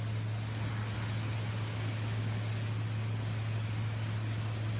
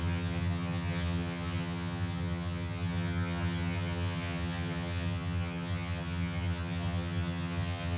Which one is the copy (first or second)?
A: second